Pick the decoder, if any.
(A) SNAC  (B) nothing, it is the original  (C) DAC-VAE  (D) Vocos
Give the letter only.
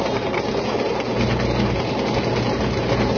B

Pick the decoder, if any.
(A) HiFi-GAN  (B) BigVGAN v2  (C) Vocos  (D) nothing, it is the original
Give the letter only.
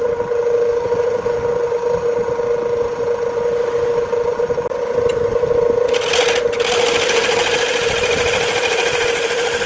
D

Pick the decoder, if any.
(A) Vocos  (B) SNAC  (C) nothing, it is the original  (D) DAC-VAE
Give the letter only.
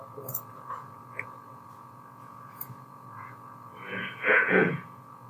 A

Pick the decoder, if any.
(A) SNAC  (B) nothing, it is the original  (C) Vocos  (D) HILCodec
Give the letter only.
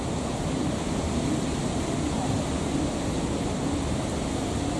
B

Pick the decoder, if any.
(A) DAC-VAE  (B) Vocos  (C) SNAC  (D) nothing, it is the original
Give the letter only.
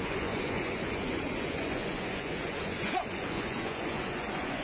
B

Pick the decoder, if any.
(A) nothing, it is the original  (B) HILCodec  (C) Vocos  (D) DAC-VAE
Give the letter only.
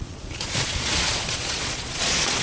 C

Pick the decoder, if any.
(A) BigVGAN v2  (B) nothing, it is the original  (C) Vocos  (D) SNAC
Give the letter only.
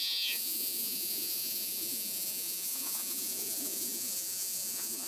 C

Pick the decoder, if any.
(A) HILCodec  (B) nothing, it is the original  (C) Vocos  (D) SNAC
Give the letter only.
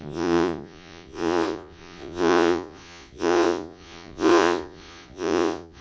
C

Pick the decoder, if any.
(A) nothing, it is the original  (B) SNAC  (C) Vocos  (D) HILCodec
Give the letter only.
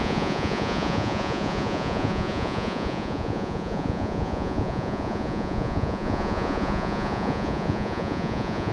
C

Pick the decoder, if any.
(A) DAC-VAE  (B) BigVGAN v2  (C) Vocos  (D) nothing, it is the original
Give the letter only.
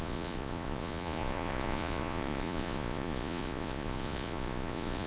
C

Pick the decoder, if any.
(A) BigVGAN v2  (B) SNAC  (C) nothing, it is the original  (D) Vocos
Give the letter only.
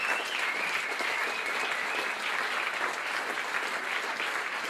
C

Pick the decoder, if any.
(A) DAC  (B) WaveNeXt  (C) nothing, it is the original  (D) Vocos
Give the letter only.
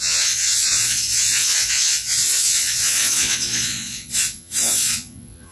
D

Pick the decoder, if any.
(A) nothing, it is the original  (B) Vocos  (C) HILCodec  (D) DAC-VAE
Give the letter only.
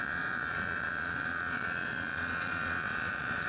B